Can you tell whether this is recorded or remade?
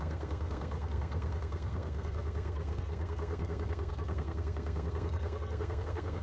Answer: remade